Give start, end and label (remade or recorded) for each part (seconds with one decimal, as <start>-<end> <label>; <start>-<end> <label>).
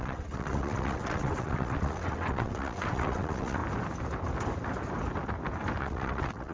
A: 0.0-3.6 remade; 3.6-5.8 recorded; 5.8-6.5 remade